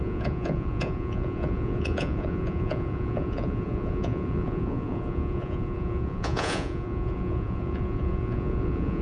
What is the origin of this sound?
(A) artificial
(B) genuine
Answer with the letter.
A